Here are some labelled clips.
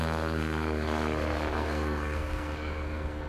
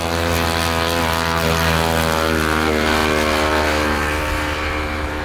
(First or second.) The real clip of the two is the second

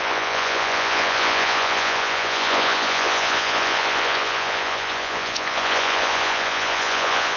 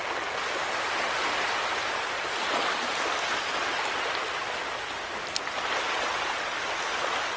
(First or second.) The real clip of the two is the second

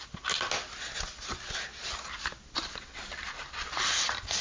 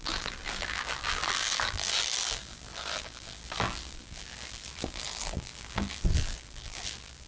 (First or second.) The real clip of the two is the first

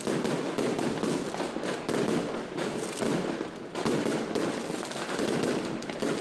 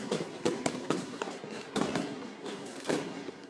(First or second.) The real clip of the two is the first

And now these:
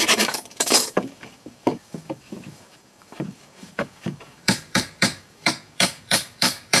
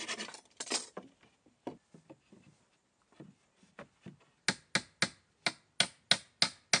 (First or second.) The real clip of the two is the second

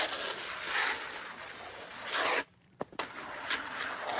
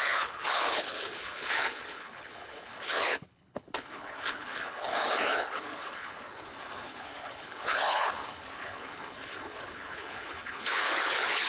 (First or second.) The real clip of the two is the first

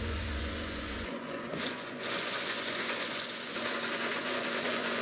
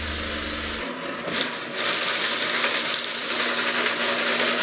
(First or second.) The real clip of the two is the second